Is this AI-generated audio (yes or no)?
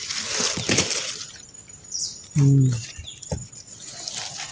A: no